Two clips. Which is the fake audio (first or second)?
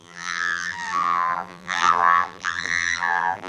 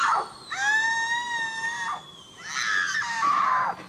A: first